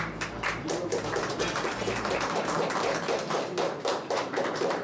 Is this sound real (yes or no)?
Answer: no